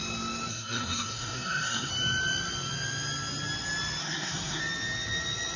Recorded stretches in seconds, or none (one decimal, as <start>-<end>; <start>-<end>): 0.0-0.5; 1.9-4.0; 4.6-5.6